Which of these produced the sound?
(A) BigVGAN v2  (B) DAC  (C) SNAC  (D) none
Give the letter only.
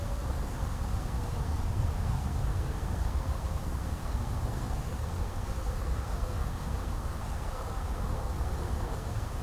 C